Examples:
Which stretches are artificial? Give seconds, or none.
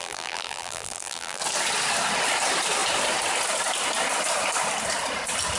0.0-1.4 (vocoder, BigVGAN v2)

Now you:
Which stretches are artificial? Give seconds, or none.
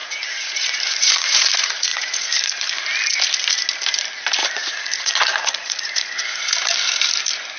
0.0-1.5 (vocoder, Vocos); 1.9-2.8; 4.4-6.4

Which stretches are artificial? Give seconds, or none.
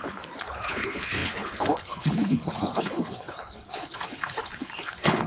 0.0-5.3 (codec, HILCodec)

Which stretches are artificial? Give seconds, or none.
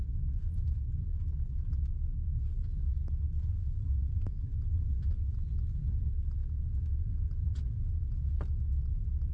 none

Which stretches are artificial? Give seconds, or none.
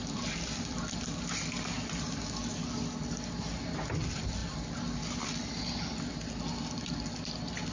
0.0-0.8 (vocoder, BigVGAN v2)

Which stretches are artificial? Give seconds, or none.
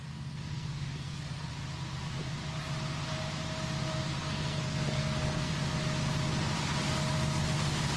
0.0-1.5 (codec, SNAC); 4.2-5.5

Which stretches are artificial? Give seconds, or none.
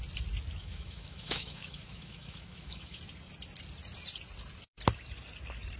0.6-3.0 (autoencoder, DAC-VAE)